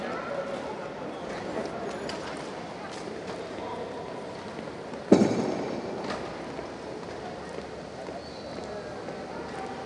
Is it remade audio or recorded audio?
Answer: recorded